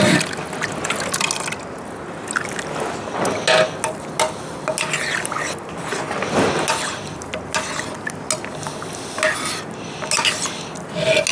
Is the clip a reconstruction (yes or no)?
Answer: no